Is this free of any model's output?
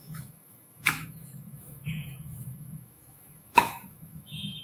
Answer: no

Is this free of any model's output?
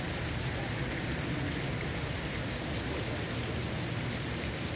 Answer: yes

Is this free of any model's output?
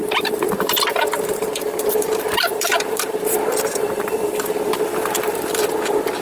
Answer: no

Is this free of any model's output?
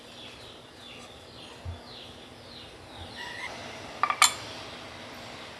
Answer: yes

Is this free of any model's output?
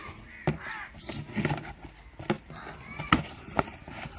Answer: yes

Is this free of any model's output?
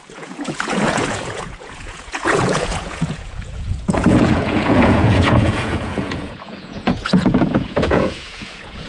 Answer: no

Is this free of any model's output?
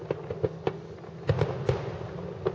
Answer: yes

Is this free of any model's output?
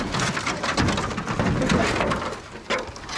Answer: yes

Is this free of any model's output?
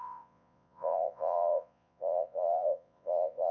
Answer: no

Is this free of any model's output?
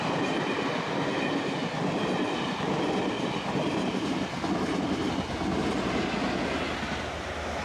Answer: yes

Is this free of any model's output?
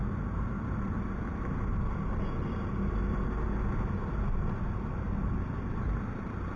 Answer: yes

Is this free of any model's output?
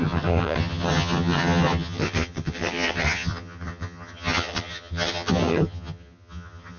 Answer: no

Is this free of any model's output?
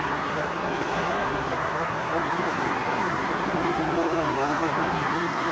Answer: no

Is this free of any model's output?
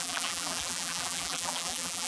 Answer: no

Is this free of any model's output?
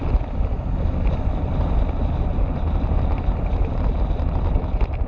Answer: yes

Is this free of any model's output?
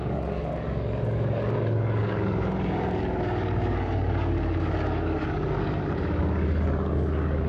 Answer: no